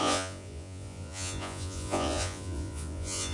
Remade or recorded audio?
remade